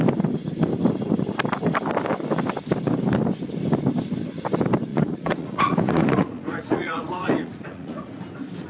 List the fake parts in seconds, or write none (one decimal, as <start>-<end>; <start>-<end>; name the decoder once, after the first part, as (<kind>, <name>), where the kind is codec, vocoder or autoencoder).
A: 4.9-8.2 (vocoder, Vocos)